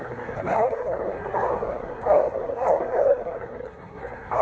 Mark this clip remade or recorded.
remade